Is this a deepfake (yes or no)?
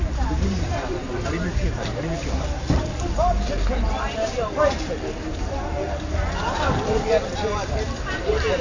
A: yes